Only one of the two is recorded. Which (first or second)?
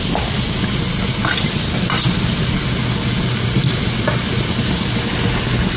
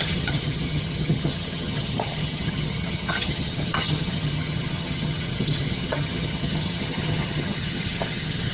first